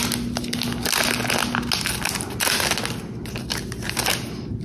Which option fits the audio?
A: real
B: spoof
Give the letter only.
A